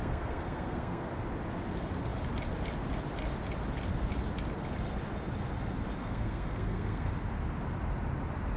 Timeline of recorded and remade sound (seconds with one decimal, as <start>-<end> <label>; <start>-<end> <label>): 0.0-1.1 remade; 1.1-6.0 recorded; 6.0-7.1 remade; 7.1-8.6 recorded